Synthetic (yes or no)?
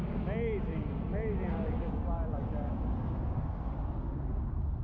no